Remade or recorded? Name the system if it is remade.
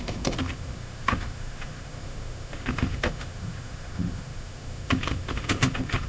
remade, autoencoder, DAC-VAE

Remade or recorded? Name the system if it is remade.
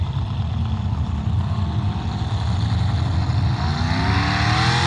recorded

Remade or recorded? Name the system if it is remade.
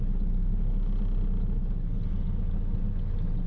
recorded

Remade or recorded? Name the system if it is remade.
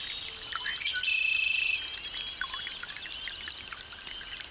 recorded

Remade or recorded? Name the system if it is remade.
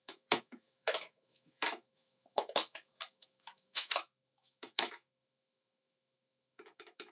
remade, autoencoder, DAC-VAE